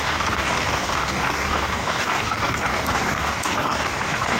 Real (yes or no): no